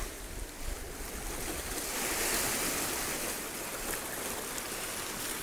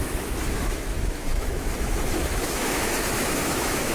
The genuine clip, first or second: first